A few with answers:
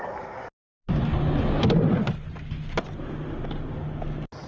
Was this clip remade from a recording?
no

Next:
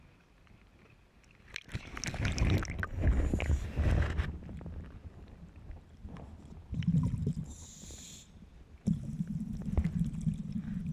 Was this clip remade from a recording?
no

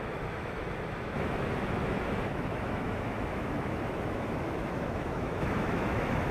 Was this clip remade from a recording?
yes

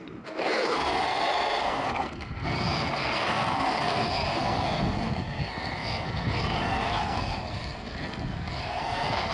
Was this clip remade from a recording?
yes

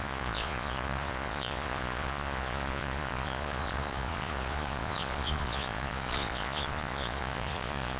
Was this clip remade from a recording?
yes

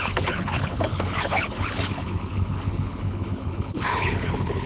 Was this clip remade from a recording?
yes